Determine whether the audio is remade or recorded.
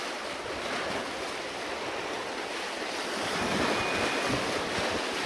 recorded